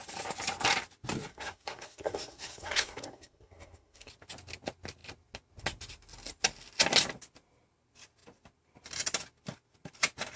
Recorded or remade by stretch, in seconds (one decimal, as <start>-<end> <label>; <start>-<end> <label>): 0.0-1.3 recorded; 1.3-4.1 remade; 4.1-10.4 recorded